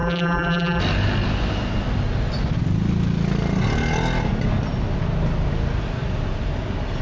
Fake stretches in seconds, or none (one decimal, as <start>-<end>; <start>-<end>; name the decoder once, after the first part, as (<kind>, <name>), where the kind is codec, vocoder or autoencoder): 0.0-0.8 (vocoder, BigVGAN v2)